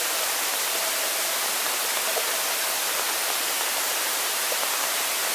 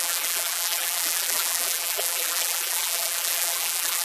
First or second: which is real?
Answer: first